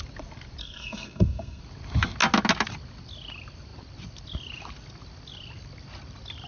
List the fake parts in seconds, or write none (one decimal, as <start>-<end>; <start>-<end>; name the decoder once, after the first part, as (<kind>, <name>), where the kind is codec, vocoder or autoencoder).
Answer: 0.6-1.6 (codec, SNAC)